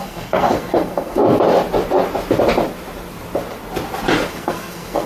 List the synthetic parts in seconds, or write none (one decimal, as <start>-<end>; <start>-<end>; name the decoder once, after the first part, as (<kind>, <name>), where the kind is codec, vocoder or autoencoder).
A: 0.0-1.2 (codec, SNAC); 4.3-5.1